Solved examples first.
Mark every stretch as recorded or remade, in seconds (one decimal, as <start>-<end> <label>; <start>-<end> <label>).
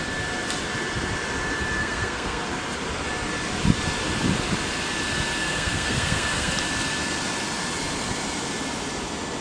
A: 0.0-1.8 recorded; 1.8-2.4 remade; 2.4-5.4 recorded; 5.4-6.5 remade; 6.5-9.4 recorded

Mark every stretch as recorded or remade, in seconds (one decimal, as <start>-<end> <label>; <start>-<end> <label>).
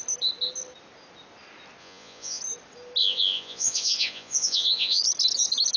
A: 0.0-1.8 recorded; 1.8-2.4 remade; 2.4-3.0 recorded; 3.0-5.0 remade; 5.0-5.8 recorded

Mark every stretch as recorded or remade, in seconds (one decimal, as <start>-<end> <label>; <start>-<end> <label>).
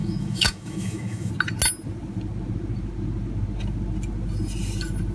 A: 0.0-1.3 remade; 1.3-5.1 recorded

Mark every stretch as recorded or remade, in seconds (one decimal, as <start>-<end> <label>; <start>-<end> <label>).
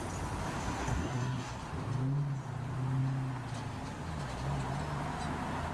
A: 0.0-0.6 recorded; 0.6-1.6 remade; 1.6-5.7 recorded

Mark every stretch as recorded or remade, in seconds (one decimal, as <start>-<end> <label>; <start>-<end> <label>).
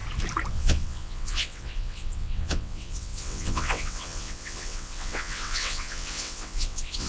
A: 0.0-0.5 recorded; 0.5-7.1 remade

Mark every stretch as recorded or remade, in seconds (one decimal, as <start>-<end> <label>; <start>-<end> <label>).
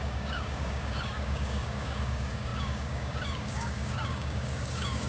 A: 0.0-5.1 remade